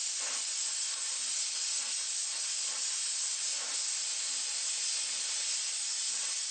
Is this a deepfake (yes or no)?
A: no